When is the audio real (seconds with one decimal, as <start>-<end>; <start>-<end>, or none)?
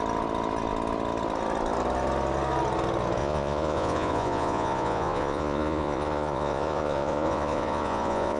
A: 0.0-3.2